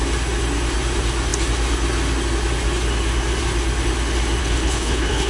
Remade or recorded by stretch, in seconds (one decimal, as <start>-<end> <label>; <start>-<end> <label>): 0.0-4.4 recorded; 4.4-5.3 remade